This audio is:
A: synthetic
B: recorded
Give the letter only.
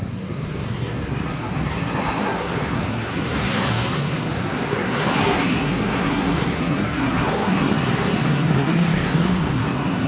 A